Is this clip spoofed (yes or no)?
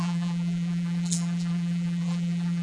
yes